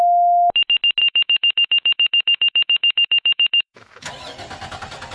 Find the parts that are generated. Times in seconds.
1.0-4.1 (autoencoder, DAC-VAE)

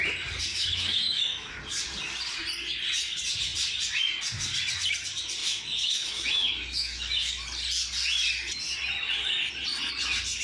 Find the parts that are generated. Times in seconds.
0.5-1.6 (autoencoder, DAC-VAE); 5.4-7.3

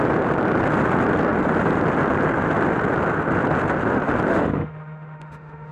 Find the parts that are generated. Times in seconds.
4.3-5.7 (autoencoder, DAC-VAE)